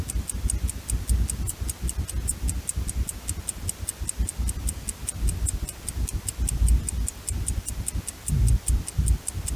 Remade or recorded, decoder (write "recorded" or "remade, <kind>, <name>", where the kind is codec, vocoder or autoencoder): recorded